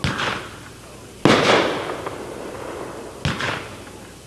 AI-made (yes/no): no